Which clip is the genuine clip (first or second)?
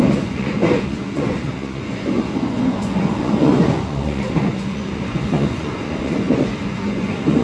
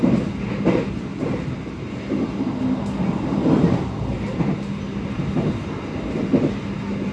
second